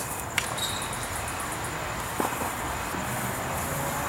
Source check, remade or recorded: recorded